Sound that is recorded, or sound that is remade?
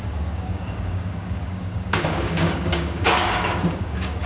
remade